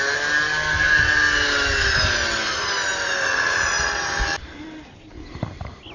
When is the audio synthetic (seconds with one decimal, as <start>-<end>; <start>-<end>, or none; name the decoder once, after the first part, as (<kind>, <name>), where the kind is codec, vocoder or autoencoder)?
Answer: none